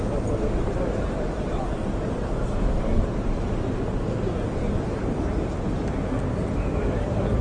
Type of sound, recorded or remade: recorded